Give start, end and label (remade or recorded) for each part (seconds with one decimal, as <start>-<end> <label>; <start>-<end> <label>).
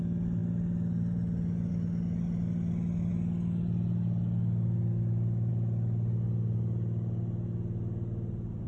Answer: 0.0-8.7 recorded